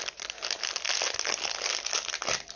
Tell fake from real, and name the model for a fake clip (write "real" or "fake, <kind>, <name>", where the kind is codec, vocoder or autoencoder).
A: real